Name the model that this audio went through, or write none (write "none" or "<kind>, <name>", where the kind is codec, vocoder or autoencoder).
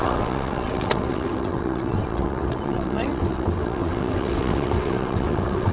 vocoder, WaveNeXt